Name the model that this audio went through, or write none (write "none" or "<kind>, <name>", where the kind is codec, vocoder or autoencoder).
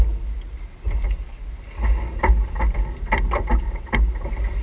none